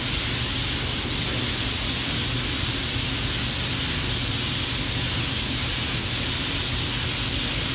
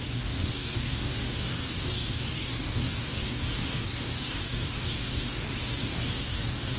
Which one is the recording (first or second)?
first